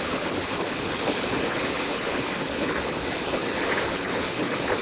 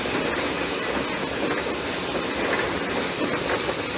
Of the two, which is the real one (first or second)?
second